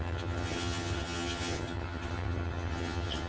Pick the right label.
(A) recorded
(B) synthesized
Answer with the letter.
B